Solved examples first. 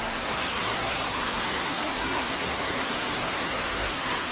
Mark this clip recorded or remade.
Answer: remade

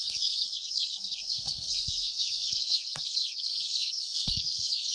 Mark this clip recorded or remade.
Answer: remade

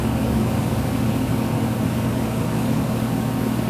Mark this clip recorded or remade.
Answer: remade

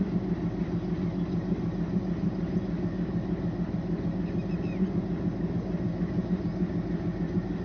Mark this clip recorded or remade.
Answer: recorded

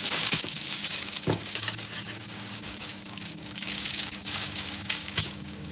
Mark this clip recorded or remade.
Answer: remade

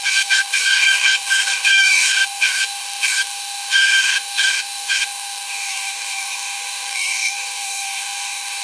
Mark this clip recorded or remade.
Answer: remade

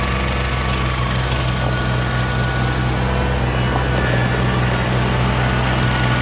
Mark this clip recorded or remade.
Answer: recorded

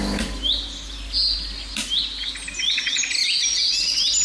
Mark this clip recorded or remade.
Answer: recorded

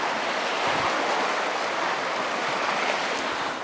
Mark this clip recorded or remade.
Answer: recorded